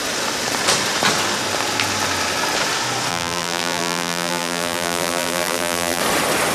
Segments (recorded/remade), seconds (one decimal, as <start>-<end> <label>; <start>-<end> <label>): 0.0-3.1 recorded; 3.1-6.0 remade; 6.0-6.5 recorded